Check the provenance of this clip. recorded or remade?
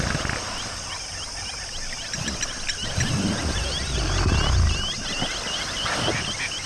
recorded